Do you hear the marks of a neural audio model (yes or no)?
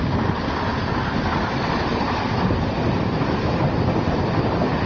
no